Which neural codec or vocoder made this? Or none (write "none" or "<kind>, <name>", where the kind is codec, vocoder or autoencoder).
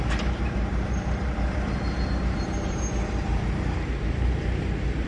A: vocoder, BigVGAN v2